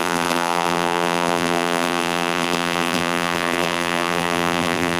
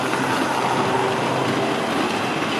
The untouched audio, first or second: second